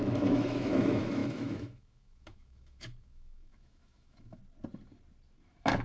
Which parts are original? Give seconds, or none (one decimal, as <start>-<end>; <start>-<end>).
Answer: 4.4-5.8